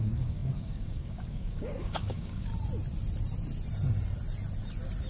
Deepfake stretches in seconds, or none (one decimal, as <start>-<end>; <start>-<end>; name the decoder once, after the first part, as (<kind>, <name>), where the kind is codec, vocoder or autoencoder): 0.0-2.5 (codec, DAC)